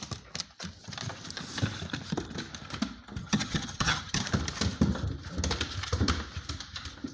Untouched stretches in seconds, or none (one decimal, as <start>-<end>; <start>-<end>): 0.0-3.2; 4.2-7.1